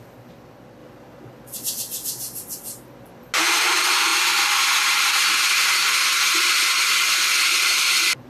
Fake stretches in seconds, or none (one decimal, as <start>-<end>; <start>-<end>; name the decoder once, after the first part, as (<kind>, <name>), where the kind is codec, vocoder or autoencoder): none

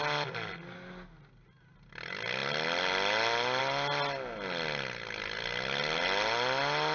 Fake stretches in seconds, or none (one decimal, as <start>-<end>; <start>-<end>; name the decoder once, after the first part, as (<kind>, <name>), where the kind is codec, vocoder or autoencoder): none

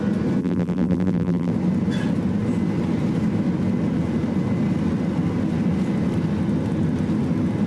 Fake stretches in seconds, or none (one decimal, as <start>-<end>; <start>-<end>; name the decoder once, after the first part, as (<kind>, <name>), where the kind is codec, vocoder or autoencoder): 0.4-1.5 (vocoder, BigVGAN v2)